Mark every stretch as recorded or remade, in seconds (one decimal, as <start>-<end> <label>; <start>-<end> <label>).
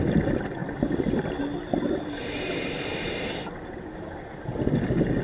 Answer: 0.0-5.2 recorded